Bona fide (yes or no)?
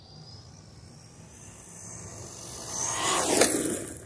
yes